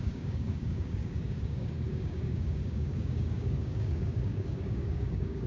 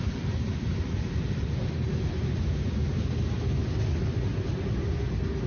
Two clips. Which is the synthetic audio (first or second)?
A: first